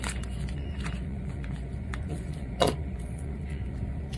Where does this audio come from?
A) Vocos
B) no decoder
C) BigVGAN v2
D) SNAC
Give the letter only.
A